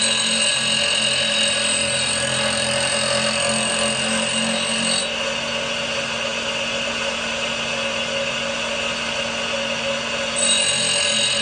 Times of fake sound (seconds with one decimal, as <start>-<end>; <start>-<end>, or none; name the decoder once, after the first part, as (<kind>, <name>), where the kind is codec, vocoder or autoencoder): none